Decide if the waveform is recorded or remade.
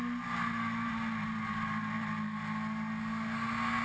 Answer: recorded